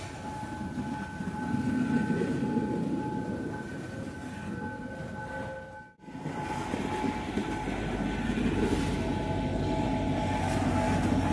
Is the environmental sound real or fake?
real